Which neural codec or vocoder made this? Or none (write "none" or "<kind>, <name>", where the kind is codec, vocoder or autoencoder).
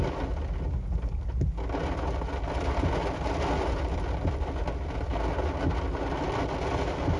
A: none